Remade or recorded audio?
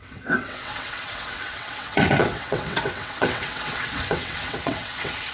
remade